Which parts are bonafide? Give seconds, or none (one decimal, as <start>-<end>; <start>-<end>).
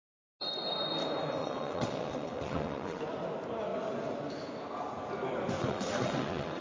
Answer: 0.0-1.4; 3.0-5.6